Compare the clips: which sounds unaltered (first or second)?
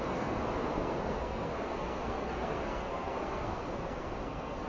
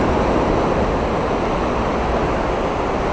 second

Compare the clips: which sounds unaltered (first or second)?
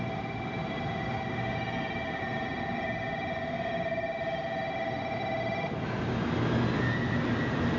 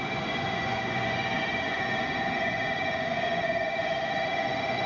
first